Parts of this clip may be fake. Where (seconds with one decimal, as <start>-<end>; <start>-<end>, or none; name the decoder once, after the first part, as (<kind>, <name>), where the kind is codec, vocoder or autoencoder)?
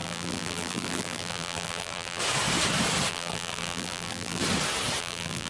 0.0-2.2 (vocoder, BigVGAN v2); 3.1-4.4; 5.0-5.5